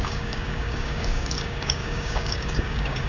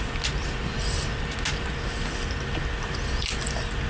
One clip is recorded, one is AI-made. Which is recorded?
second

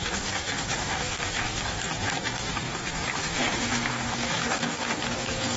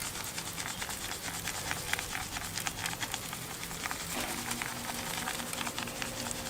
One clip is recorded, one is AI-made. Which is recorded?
second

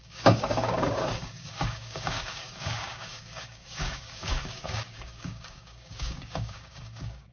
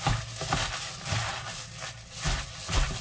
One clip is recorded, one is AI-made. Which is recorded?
second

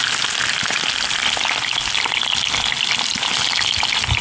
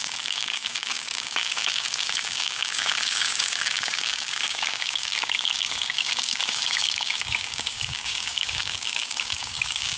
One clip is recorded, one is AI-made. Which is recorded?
first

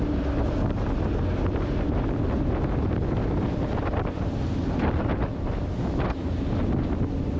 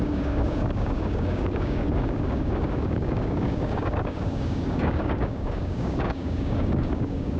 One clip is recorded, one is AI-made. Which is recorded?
first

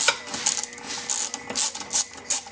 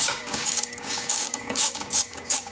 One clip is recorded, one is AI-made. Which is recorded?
first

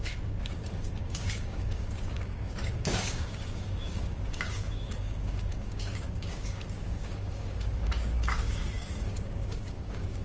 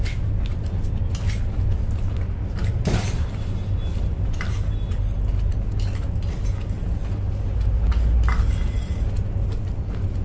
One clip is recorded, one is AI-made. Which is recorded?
second